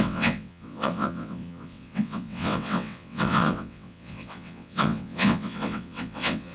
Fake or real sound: fake